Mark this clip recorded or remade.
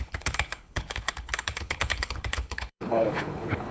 remade